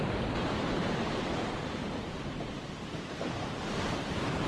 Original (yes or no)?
no